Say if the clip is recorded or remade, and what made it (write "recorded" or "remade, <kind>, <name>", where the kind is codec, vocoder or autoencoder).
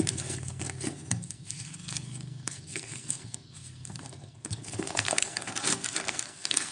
remade, codec, SNAC